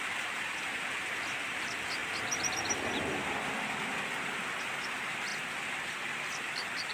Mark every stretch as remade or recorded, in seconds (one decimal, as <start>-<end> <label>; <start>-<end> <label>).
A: 0.0-2.0 remade; 2.0-4.8 recorded; 4.8-5.3 remade; 5.3-5.8 recorded; 5.8-6.9 remade